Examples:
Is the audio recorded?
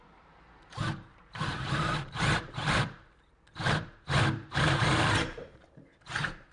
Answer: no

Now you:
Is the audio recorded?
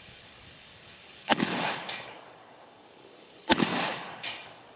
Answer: no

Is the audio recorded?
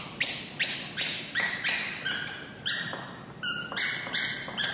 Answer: yes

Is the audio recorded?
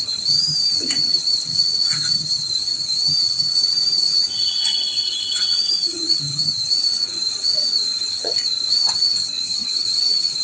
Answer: no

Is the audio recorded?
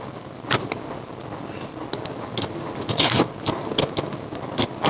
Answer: yes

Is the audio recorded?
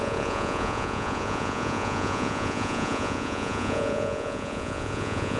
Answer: no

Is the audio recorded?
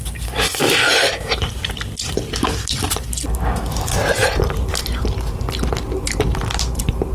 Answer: yes